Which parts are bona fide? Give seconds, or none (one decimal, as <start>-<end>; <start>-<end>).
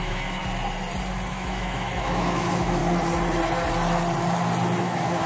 0.4-1.3; 2.8-4.8